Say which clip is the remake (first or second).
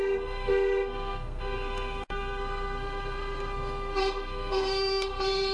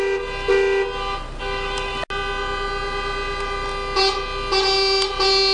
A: first